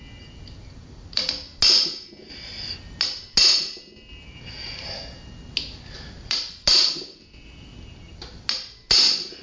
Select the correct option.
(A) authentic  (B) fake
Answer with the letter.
A